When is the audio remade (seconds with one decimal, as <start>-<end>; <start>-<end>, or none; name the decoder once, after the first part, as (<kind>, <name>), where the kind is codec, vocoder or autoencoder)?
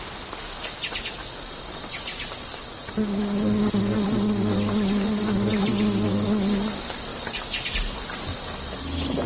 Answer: none